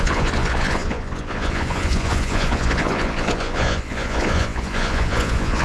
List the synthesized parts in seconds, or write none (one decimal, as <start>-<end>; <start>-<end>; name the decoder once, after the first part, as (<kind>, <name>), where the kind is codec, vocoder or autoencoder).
0.0-5.6 (vocoder, Vocos)